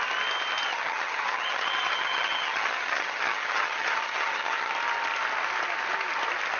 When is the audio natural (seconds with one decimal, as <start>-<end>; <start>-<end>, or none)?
0.0-0.7; 4.7-6.6